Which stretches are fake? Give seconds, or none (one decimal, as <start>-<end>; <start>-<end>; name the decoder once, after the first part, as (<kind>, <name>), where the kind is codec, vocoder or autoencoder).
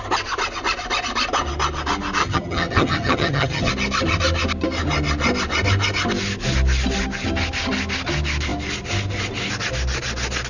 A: 2.2-3.7 (vocoder, HiFi-GAN)